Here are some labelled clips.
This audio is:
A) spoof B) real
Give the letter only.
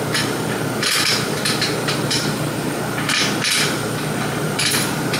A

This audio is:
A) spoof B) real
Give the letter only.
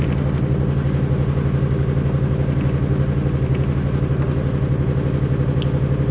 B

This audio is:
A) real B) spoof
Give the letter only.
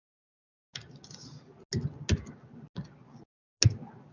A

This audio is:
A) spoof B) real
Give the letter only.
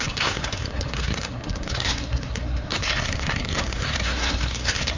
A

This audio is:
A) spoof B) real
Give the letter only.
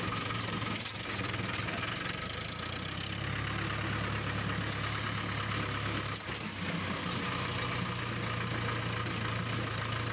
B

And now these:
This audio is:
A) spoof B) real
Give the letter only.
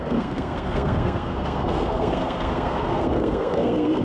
A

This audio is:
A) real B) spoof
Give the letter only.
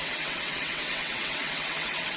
B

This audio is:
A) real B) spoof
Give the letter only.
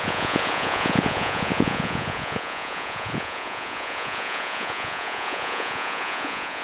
B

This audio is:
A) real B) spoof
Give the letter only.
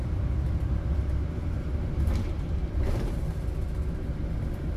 A